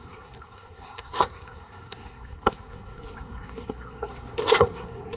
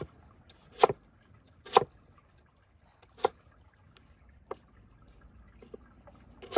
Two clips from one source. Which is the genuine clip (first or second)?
second